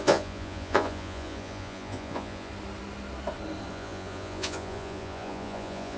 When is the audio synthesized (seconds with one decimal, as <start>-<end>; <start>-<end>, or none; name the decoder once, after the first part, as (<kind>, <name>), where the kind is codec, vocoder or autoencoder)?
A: 0.0-2.5 (vocoder, Vocos); 3.7-6.0